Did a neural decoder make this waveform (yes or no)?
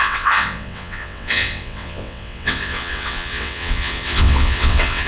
yes